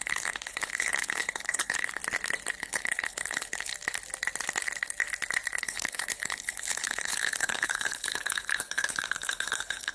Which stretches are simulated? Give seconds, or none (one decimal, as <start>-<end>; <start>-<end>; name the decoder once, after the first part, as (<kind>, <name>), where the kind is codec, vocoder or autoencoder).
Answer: 0.0-2.0 (codec, HILCodec); 2.6-3.7; 5.6-9.9